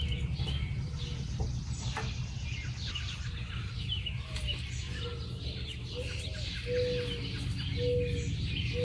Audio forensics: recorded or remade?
recorded